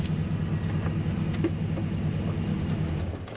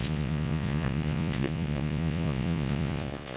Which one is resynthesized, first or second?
second